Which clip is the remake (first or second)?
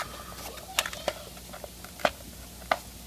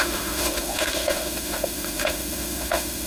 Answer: second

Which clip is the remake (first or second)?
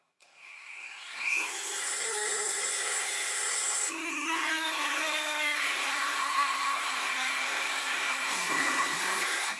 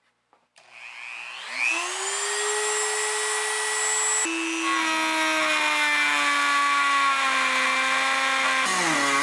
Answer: first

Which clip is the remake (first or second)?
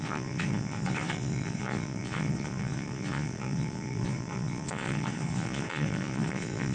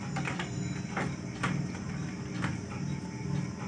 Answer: first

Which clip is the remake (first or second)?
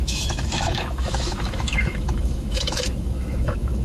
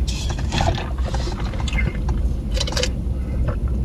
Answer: first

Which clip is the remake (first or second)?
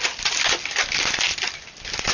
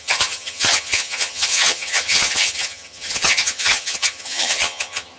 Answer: second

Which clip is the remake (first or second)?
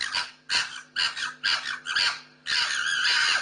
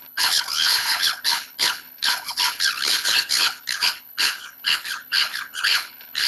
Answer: second